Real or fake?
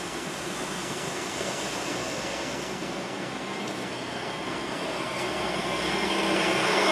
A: fake